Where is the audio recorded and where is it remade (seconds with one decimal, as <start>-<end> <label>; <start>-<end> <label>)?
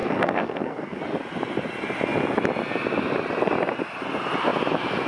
0.0-1.0 remade; 1.0-5.1 recorded